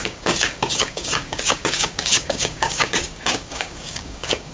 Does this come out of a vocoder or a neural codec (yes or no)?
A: yes